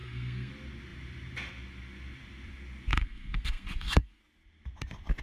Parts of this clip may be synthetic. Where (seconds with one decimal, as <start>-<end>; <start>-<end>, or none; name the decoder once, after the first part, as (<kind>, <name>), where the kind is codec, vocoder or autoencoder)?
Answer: 0.0-0.5 (codec, SNAC); 2.9-4.2

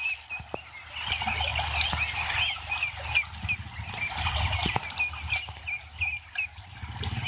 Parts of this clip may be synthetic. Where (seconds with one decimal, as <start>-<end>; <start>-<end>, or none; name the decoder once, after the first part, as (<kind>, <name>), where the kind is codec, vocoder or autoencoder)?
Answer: none

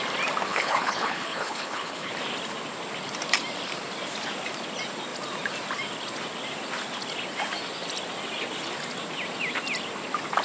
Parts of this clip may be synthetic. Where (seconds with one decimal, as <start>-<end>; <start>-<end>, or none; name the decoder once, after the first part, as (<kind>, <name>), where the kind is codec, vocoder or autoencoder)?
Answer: 0.5-2.1 (codec, HILCodec)

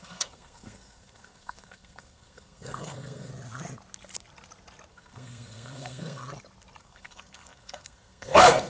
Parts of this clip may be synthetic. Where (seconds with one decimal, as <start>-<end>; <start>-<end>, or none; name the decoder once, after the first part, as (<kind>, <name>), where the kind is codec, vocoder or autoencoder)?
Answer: 0.0-3.3 (codec, SNAC); 4.9-6.2; 6.8-8.7

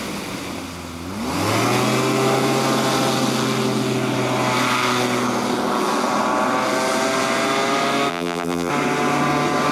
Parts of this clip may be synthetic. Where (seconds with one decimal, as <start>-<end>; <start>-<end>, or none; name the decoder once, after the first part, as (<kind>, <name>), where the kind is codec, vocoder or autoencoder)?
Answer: 8.1-8.7 (vocoder, BigVGAN v2)

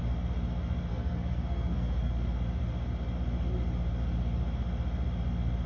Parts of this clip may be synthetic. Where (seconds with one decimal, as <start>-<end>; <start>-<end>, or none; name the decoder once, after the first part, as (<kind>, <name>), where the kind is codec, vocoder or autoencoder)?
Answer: 0.9-2.1 (codec, SNAC)